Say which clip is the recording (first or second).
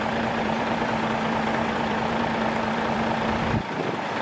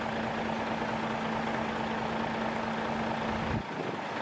second